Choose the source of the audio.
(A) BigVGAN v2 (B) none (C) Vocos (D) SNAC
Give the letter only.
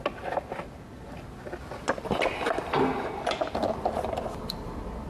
B